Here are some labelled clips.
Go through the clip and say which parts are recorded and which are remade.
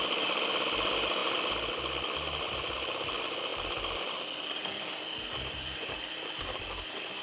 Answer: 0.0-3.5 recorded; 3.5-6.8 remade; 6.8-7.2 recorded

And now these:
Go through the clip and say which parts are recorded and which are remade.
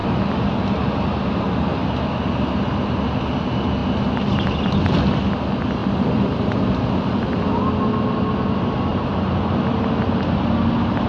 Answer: 0.0-3.8 recorded; 3.8-5.0 remade; 5.0-5.8 recorded; 5.8-6.6 remade; 6.6-8.9 recorded; 8.9-10.4 remade; 10.4-11.1 recorded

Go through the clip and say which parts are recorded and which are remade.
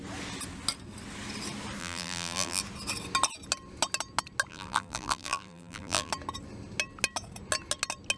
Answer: 0.0-1.8 recorded; 1.8-2.6 remade; 2.6-4.5 recorded; 4.5-6.1 remade; 6.1-8.2 recorded